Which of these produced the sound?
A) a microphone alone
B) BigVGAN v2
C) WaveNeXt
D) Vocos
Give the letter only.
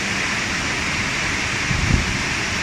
A